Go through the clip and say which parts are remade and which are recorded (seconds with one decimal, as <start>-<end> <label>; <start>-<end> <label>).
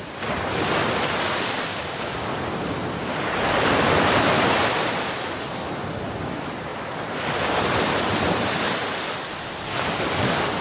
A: 0.0-2.8 remade; 2.8-4.8 recorded; 4.8-6.7 remade; 6.7-7.5 recorded; 7.5-10.6 remade